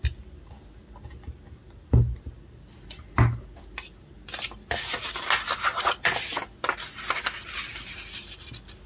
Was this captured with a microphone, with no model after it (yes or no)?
yes